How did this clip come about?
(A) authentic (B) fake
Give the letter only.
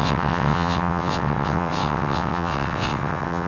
B